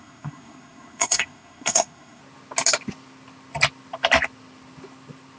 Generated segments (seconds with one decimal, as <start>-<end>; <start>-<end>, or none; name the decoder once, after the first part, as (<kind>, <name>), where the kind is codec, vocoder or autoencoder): 0.0-2.2 (codec, SNAC)